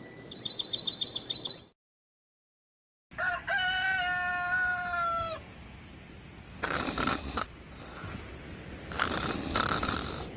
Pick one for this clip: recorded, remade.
recorded